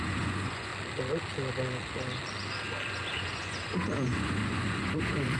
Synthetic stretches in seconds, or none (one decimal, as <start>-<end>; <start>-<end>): 0.0-0.7; 2.9-5.4